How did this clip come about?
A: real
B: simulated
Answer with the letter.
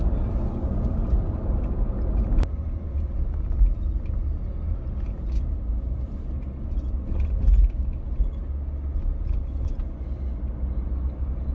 A